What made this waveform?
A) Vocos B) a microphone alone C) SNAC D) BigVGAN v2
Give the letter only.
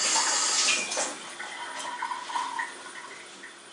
B